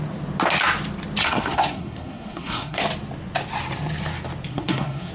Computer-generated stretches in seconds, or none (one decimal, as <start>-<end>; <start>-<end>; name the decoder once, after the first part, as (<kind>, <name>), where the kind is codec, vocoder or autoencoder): 1.2-2.8 (codec, SNAC); 4.5-5.1